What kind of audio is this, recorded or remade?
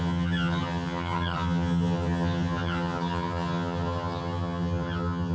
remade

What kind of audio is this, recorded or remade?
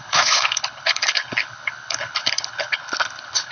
remade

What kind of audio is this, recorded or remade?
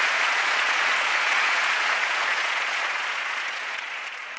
remade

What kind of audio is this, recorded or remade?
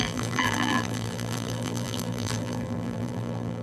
remade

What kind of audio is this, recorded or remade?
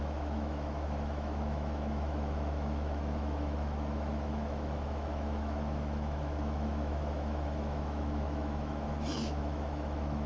remade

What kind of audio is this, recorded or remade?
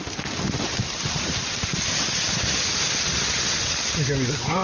recorded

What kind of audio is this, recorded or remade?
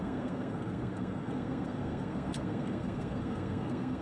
remade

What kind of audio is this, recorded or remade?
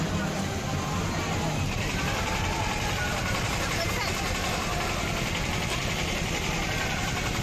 recorded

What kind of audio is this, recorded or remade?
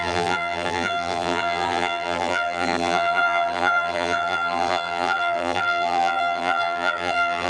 remade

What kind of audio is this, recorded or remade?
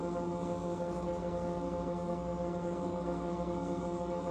remade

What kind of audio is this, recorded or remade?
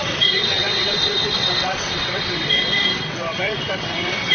remade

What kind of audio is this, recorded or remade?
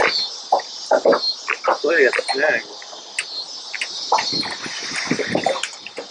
recorded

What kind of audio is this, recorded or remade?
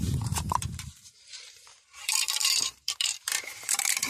remade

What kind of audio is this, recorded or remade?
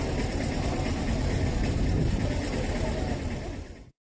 recorded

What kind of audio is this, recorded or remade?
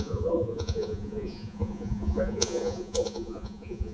remade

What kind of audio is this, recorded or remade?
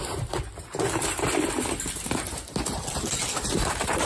recorded